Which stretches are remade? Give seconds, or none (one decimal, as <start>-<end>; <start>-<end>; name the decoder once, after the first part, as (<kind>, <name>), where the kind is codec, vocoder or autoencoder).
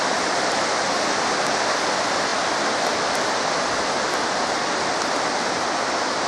none